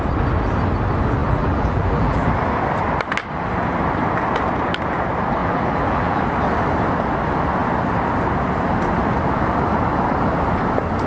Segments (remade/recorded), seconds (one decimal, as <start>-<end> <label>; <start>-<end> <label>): 0.0-1.2 recorded; 1.2-2.3 remade; 2.3-5.4 recorded; 5.4-6.2 remade; 6.2-11.1 recorded